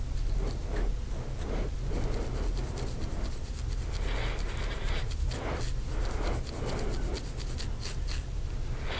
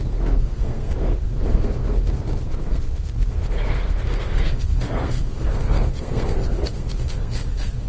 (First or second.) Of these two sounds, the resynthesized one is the second